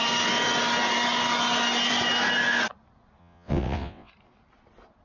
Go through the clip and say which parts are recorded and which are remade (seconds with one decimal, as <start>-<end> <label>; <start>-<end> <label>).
0.0-3.2 recorded; 3.2-4.1 remade; 4.1-5.0 recorded